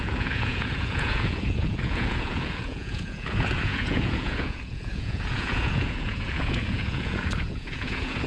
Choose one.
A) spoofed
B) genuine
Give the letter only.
A